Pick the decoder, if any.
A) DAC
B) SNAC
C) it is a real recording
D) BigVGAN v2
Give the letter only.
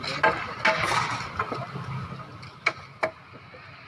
C